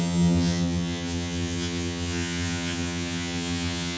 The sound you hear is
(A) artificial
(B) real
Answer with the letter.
A